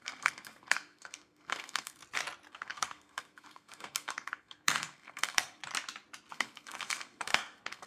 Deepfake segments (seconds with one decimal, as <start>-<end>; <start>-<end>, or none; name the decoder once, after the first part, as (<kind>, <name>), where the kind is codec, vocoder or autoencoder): 0.0-2.0 (codec, SNAC); 2.5-5.6; 6.3-7.9